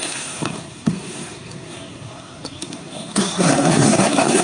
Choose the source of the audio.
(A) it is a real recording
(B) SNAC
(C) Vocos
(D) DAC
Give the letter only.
B